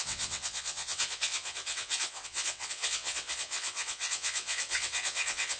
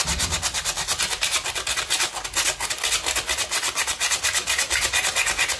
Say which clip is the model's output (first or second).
first